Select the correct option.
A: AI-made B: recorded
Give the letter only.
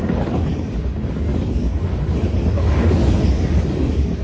A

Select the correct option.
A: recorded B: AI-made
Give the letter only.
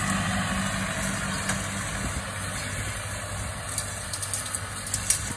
A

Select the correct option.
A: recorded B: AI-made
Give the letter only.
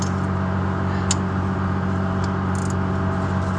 A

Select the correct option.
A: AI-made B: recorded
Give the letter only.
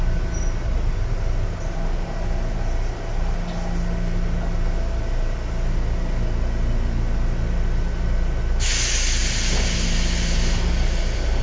B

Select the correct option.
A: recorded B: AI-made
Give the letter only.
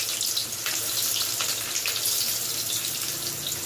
A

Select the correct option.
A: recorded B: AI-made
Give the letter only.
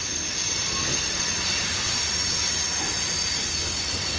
A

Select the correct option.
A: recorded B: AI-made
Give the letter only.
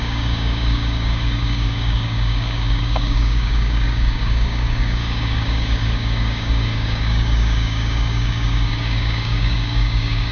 B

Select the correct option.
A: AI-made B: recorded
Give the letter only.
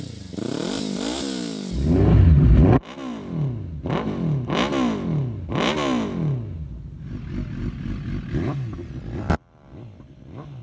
B